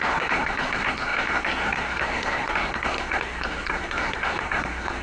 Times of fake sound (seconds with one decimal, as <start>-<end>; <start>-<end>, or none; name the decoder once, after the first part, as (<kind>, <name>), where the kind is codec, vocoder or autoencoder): 0.0-5.0 (codec, SNAC)